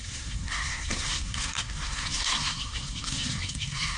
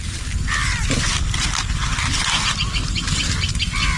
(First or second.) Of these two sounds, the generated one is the first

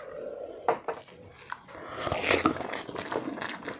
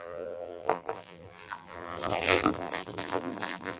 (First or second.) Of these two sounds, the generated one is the second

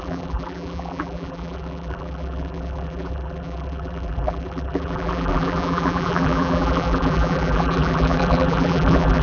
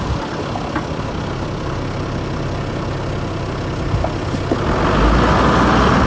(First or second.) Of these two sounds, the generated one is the first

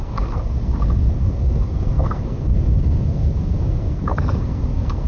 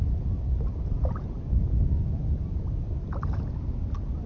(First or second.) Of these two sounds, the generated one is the first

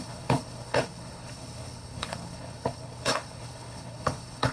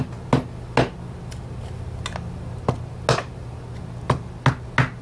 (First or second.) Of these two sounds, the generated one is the first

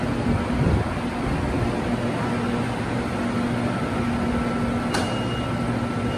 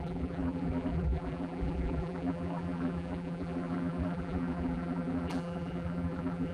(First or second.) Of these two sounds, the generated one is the second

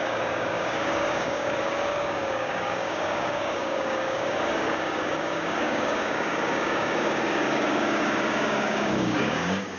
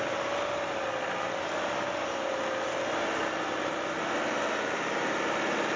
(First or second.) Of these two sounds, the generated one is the first